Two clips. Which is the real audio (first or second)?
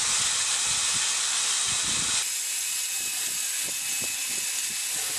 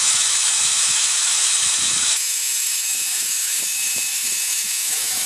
first